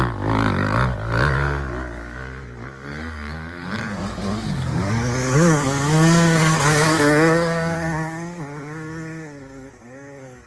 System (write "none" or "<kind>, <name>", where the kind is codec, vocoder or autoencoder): codec, DAC